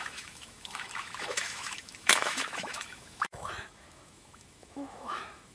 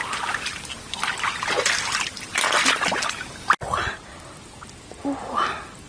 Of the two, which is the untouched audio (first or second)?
second